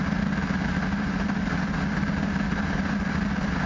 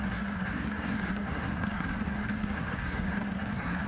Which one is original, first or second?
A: first